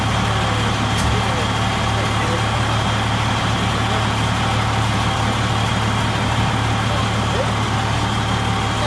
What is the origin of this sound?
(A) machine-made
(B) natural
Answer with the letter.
B